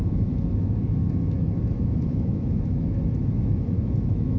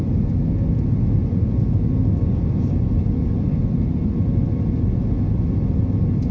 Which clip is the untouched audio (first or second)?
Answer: second